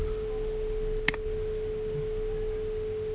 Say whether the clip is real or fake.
real